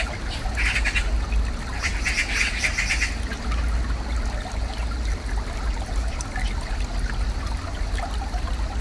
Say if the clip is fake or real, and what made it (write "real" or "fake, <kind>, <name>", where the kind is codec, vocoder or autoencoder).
real